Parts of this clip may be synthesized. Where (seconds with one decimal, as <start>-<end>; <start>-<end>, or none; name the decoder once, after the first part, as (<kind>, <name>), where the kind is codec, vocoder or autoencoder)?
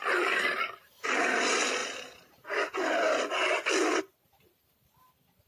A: none